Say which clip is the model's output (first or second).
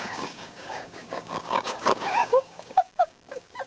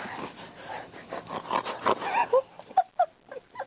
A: first